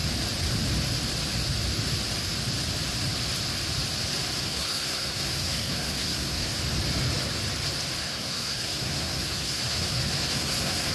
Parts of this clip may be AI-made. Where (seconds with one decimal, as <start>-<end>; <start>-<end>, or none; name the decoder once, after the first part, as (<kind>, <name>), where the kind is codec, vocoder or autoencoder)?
4.4-6.5 (codec, SNAC); 8.0-10.9